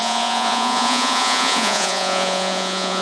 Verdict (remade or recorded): remade